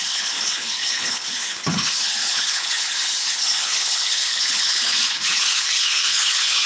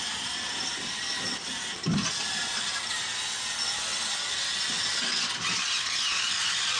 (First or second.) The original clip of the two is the second